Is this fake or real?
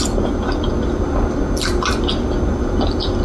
real